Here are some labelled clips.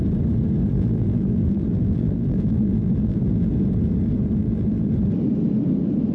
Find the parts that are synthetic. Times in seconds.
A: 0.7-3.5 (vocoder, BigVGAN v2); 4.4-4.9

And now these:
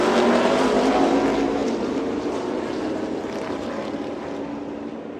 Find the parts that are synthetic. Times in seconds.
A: none

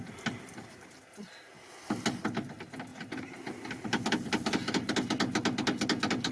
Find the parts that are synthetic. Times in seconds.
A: 2.9-3.4 (vocoder, BigVGAN v2)

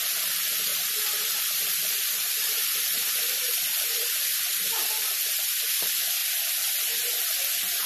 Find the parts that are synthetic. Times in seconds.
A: 0.7-4.7 (vocoder, BigVGAN v2)

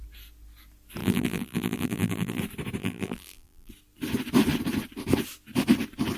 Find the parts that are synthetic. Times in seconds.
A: 1.0-2.4 (vocoder, BigVGAN v2); 2.8-3.7